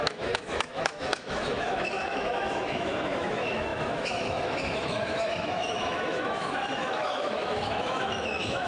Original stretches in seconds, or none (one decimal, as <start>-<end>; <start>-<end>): none